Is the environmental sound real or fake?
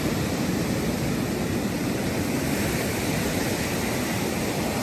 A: real